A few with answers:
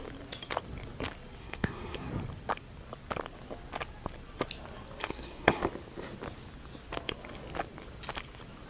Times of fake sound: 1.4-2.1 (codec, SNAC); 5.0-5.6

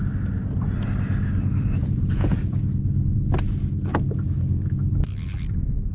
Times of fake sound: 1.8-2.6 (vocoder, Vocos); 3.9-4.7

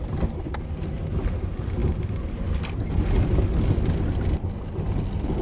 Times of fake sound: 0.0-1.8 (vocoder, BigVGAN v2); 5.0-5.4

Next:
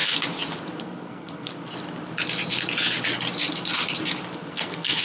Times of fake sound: 0.8-1.5 (codec, SNAC); 4.5-5.0

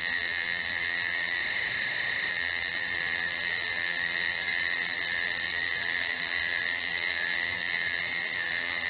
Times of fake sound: 0.0-1.4 (vocoder, BigVGAN v2); 2.3-8.9

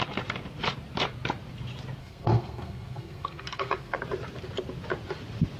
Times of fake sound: 2.0-4.0 (codec, SNAC)

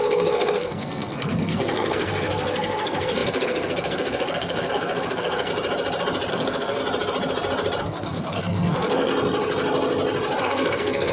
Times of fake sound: 0.0-5.5 (codec, SNAC); 6.3-6.8; 7.8-9.1; 10.4-11.1